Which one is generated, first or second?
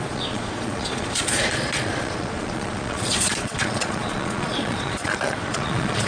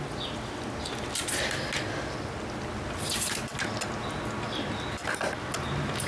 first